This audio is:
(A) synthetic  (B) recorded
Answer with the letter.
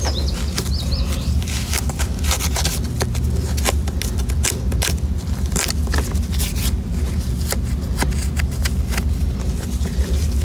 B